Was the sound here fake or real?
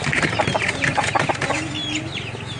real